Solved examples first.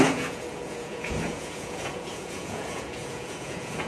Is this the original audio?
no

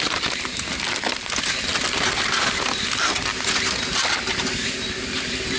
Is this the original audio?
yes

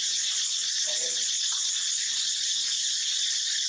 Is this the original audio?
no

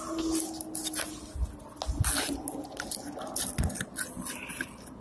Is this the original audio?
yes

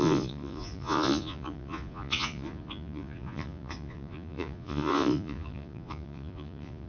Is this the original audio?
no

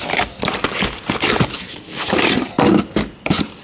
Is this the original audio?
yes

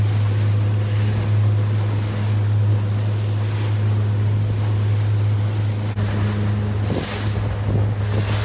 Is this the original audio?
yes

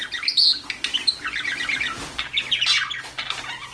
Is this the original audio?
yes